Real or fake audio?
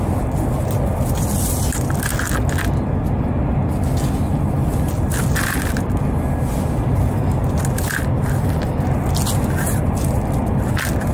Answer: real